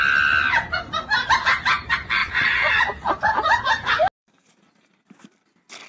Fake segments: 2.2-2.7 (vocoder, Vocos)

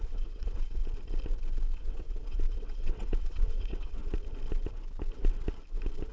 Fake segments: 0.0-0.8 (vocoder, WaveNeXt); 1.7-4.0